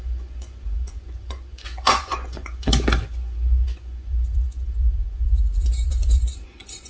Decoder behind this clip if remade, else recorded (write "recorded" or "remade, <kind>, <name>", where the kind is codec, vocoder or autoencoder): remade, vocoder, Vocos